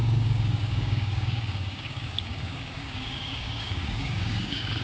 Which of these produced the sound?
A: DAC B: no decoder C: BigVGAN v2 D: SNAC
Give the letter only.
A